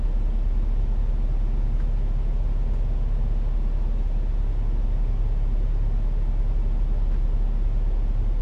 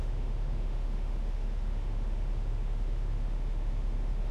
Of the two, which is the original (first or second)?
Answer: first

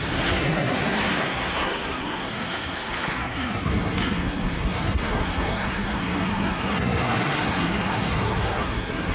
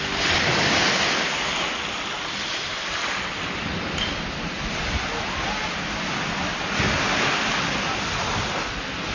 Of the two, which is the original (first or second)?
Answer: second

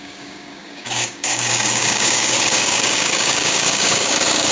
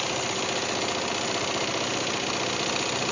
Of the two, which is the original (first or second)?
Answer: second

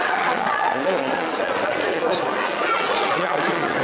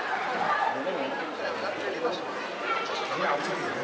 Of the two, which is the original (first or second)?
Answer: second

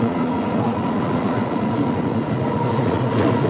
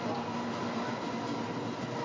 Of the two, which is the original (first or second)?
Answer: second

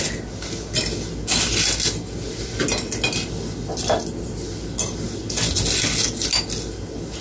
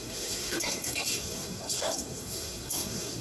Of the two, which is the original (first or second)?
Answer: first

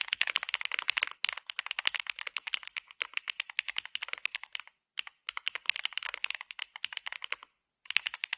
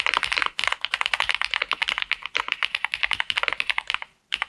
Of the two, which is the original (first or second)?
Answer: first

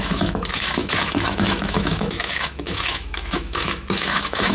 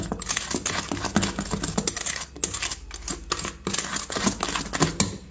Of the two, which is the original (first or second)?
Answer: second